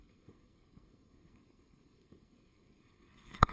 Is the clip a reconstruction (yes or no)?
yes